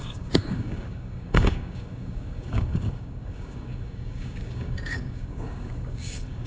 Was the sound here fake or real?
fake